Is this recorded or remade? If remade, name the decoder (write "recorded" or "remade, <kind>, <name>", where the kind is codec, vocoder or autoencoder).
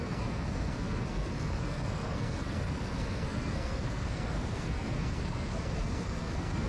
remade, codec, SNAC